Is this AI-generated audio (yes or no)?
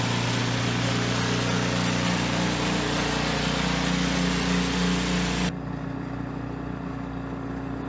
no